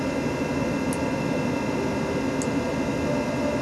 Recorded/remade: recorded